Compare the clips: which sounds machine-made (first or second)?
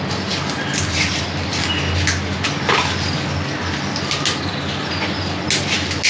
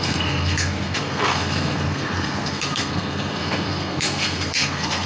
second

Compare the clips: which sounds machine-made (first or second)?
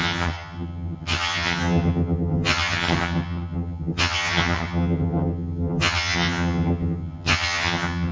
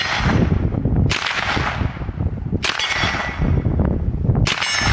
first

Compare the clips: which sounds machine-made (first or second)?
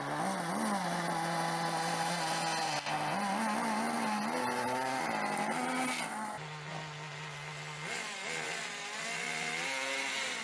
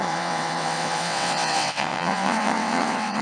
second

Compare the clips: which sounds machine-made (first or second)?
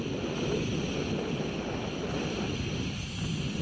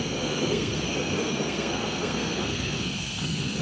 second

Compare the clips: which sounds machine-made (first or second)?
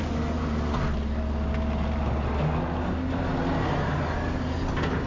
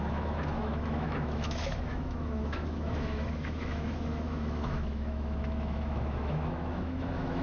second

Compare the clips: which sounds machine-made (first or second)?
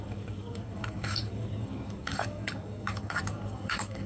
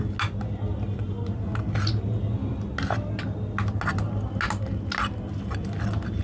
first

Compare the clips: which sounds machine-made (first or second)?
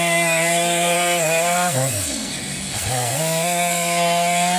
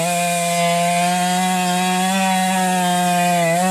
first